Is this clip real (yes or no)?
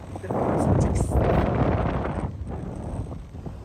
yes